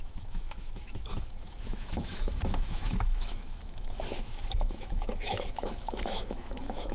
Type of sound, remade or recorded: remade